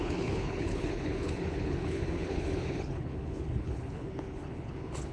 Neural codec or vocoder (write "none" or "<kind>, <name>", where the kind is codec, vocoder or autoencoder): codec, HILCodec